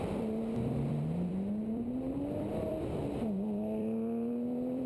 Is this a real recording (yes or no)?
no